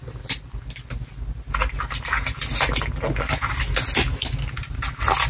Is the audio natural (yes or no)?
yes